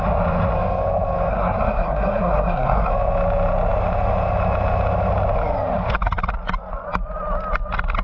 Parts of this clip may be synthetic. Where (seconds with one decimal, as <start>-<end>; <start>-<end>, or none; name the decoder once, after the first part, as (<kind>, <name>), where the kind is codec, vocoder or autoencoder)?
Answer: 1.3-2.9 (codec, SNAC)